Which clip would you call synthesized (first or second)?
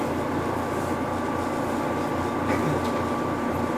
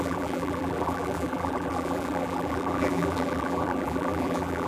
second